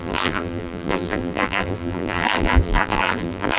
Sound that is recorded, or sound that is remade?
remade